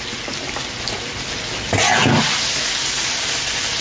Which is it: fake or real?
real